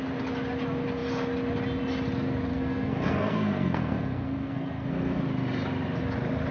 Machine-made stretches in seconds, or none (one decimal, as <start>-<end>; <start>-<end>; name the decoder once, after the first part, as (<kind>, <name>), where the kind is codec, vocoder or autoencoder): 2.5-5.2 (codec, SNAC)

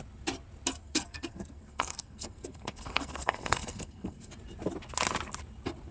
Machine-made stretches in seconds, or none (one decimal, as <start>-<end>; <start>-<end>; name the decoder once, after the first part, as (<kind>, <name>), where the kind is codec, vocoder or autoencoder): 0.8-4.3 (codec, SNAC)

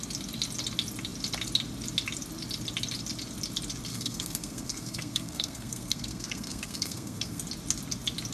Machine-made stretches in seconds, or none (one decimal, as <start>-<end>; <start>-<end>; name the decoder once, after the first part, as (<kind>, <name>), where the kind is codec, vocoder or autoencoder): 3.9-7.4 (codec, SNAC)

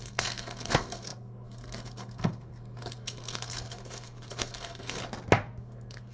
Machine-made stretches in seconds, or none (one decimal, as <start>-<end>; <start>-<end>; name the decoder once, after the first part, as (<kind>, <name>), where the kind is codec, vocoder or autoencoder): 0.0-5.0 (codec, SNAC); 5.6-6.1

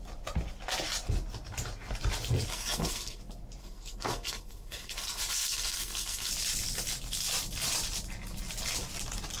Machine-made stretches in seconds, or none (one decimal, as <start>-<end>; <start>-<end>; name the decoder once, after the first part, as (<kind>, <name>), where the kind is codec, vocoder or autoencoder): 2.5-3.2 (codec, SNAC); 3.6-6.3

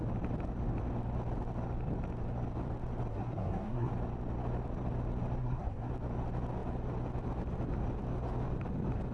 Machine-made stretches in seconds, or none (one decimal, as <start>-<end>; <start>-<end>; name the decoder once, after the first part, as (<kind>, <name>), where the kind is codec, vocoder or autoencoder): 3.1-3.9 (codec, SNAC); 5.4-5.9

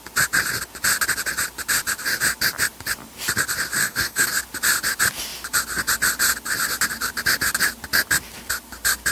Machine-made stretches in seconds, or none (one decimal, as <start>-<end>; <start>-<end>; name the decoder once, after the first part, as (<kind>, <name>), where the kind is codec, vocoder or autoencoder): 3.8-4.4 (codec, SNAC)